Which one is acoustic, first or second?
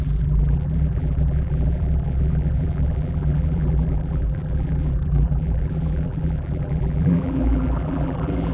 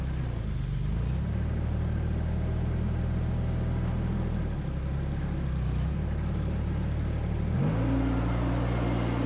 second